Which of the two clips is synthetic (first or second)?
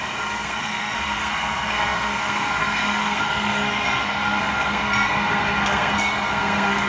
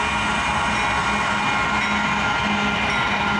first